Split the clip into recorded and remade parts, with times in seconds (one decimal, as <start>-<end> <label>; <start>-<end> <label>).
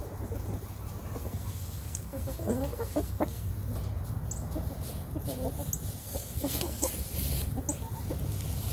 0.0-1.2 recorded; 1.2-3.5 remade; 3.5-6.0 recorded; 6.0-6.9 remade; 6.9-8.7 recorded